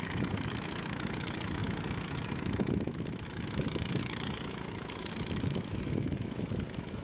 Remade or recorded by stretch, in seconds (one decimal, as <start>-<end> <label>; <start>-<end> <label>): 0.0-7.0 remade